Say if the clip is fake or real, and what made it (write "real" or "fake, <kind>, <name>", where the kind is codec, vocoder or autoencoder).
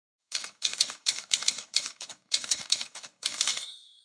fake, codec, DAC